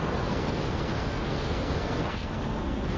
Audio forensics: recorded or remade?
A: remade